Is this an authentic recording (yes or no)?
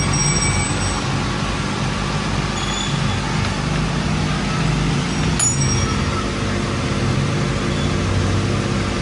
yes